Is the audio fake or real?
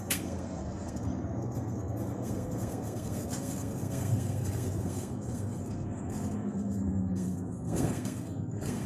fake